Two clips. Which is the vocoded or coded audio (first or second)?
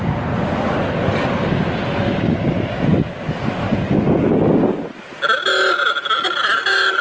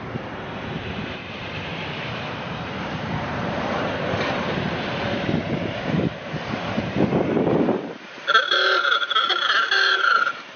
second